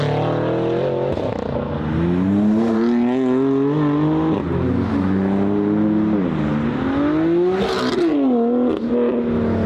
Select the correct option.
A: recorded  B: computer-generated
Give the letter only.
A